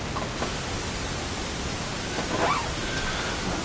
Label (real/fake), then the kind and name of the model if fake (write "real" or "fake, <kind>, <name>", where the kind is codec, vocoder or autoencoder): real